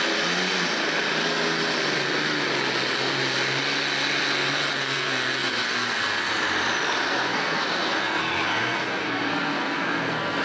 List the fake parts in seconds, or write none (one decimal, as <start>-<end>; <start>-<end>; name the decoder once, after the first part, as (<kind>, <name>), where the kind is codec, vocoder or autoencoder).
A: 4.7-6.4 (codec, SNAC); 7.1-10.4